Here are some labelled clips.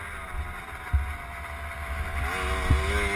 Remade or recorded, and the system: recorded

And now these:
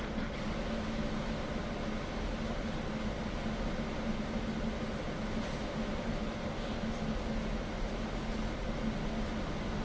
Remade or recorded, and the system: recorded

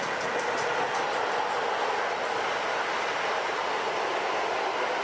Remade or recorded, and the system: recorded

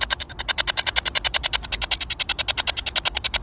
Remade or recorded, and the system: recorded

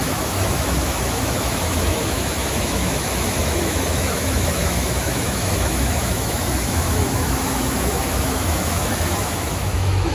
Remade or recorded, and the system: remade, autoencoder, DAC-VAE